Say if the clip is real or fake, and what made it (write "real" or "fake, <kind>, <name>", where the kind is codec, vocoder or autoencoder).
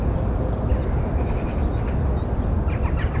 real